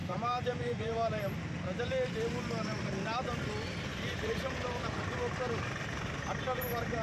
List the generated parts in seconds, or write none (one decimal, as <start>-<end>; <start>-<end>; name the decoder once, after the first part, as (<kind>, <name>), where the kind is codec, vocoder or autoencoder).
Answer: 0.0-1.4 (vocoder, BigVGAN v2); 3.9-4.8